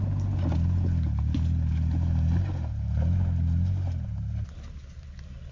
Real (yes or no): yes